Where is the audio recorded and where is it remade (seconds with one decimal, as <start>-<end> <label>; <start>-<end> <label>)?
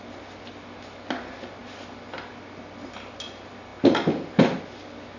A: 0.0-5.2 recorded